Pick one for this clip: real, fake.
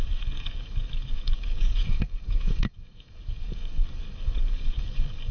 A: fake